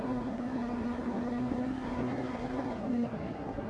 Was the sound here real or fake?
fake